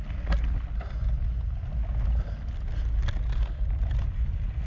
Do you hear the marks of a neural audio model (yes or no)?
no